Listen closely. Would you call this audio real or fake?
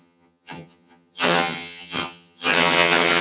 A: fake